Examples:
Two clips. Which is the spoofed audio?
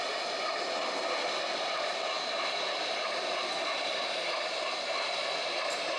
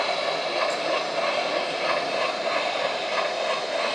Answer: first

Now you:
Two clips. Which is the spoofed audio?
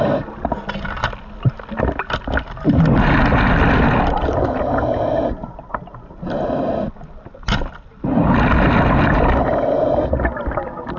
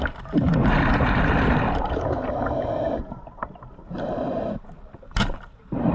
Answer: second